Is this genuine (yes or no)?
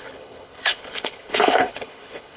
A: no